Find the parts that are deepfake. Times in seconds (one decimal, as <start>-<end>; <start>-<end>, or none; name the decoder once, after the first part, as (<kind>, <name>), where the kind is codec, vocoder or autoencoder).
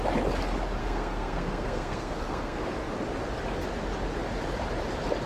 0.8-2.6 (codec, SNAC)